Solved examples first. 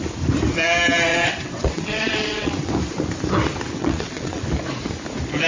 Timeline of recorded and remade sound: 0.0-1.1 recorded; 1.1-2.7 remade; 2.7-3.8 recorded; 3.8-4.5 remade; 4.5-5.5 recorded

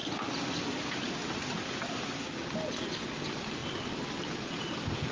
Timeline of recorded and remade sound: 0.0-5.1 recorded

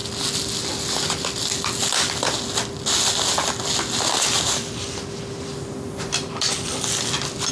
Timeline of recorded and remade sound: 0.0-7.5 recorded

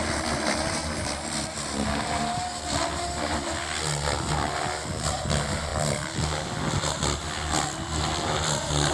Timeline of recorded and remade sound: 0.0-8.9 recorded